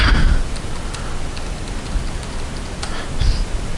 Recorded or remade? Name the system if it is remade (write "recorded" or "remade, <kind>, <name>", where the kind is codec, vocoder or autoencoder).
recorded